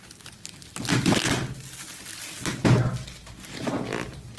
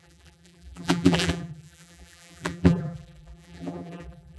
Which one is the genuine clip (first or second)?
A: first